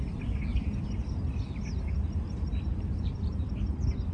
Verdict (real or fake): real